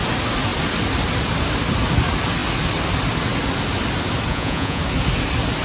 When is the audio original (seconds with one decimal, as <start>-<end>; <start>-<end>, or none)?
0.0-4.3; 4.8-5.6